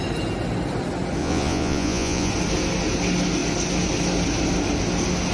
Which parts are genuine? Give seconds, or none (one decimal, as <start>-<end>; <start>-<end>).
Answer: 0.0-1.2; 2.3-5.3